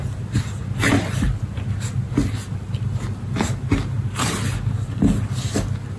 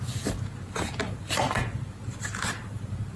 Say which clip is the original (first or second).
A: first